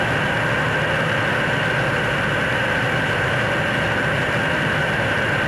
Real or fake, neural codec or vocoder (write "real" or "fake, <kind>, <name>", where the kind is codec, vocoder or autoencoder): real